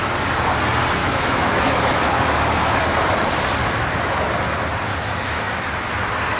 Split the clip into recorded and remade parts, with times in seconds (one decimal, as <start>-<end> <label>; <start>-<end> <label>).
0.0-1.0 recorded; 1.0-2.8 remade; 2.8-3.6 recorded; 3.6-4.2 remade; 4.2-4.9 recorded; 4.9-5.6 remade; 5.6-6.4 recorded